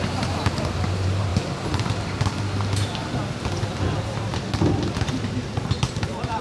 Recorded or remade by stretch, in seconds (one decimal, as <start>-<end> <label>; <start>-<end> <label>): 0.0-1.3 remade; 1.3-5.1 recorded; 5.1-6.4 remade